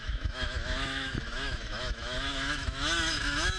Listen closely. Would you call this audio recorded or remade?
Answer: remade